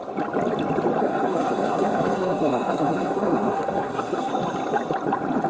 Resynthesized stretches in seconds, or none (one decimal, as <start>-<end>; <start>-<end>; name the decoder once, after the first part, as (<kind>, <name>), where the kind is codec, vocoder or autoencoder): 1.0-4.3 (codec, SNAC)